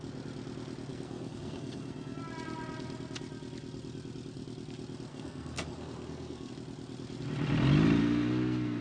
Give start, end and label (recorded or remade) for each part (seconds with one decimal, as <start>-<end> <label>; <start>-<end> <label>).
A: 0.0-0.9 recorded; 0.9-2.2 remade; 2.2-5.1 recorded; 5.1-6.5 remade; 6.5-8.0 recorded; 8.0-8.8 remade